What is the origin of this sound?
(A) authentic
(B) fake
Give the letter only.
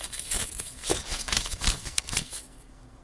B